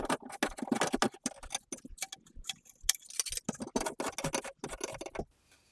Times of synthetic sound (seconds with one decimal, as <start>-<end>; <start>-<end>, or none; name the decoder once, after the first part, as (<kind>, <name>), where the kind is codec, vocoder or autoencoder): none